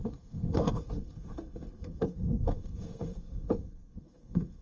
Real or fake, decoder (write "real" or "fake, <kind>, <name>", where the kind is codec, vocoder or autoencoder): fake, codec, SNAC